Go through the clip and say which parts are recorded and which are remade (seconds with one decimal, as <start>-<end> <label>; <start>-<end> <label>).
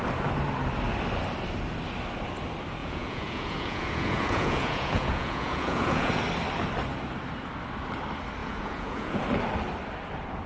0.0-2.8 recorded; 2.8-6.1 remade; 6.1-8.4 recorded; 8.4-9.2 remade; 9.2-10.5 recorded